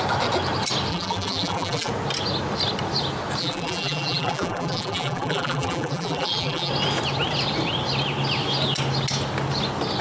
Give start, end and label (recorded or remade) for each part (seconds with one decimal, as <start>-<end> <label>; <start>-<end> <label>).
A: 0.0-0.9 recorded; 0.9-1.9 remade; 1.9-3.4 recorded; 3.4-6.7 remade; 6.7-10.0 recorded